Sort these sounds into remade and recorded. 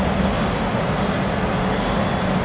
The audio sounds recorded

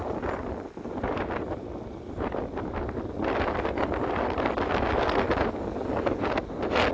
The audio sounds recorded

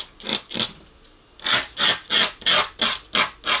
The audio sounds recorded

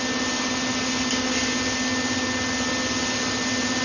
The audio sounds recorded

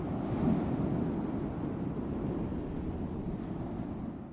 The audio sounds recorded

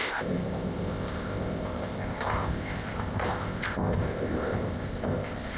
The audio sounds remade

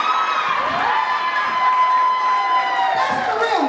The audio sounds recorded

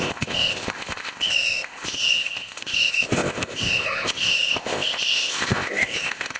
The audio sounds remade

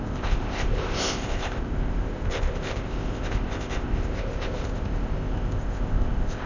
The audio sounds remade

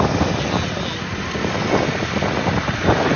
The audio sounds recorded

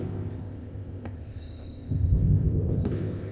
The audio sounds remade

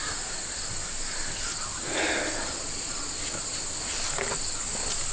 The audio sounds recorded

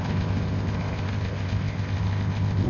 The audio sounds remade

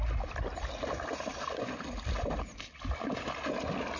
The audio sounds recorded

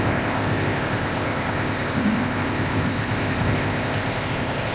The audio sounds remade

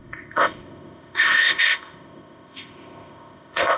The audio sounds remade